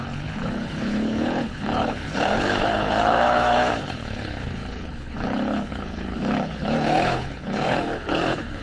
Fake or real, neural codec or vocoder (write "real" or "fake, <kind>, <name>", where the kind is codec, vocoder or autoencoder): fake, codec, HILCodec